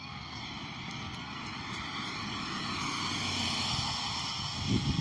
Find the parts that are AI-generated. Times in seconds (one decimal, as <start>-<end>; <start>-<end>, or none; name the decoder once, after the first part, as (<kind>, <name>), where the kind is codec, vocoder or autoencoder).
0.0-0.4 (codec, SNAC); 0.9-1.4; 4.3-5.0